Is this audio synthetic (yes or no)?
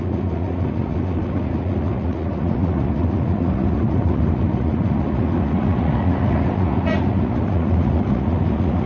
yes